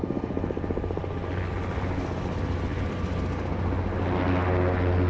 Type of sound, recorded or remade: recorded